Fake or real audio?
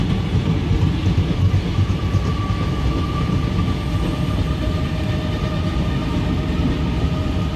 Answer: real